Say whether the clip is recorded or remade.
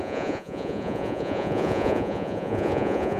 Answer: remade